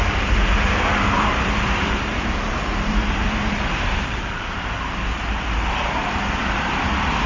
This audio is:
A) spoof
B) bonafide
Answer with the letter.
A